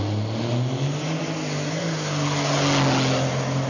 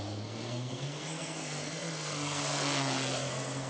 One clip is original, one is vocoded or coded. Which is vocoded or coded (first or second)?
second